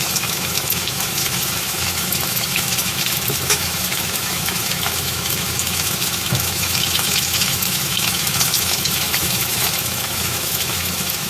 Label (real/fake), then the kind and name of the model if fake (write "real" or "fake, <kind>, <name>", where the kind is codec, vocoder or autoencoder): fake, autoencoder, DAC-VAE